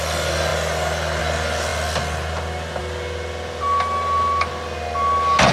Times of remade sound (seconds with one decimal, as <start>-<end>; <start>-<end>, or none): none